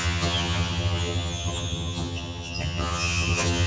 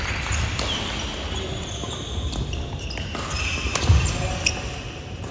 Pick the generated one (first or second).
first